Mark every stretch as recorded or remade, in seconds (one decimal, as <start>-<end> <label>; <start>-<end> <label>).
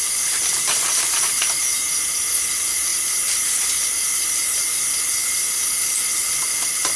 0.0-2.9 recorded; 2.9-3.4 remade; 3.4-7.0 recorded